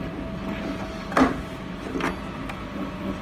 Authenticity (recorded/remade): recorded